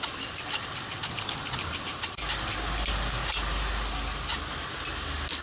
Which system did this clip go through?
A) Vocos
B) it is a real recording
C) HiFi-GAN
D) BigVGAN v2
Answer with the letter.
B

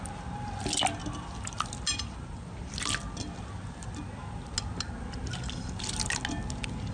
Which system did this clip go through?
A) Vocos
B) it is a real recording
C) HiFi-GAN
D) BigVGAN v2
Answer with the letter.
B